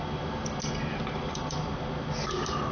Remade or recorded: recorded